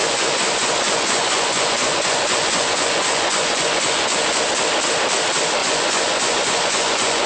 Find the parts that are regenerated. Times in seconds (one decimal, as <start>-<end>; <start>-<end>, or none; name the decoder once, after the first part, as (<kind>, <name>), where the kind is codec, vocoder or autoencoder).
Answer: 0.0-4.4 (vocoder, Vocos); 5.6-7.3